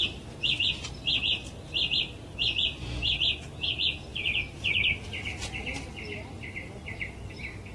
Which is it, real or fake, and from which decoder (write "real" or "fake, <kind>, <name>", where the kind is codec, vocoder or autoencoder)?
real